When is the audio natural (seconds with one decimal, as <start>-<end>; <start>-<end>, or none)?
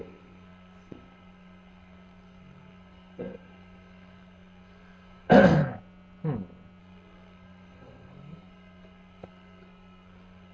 5.6-6.8